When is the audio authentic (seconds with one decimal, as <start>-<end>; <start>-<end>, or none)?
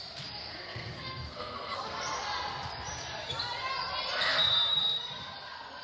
0.0-0.4; 2.0-5.8